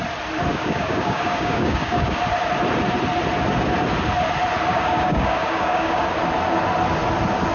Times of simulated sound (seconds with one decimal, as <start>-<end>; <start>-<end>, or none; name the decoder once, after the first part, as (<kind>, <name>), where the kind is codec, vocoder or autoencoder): 0.5-2.2 (codec, DAC); 4.7-6.0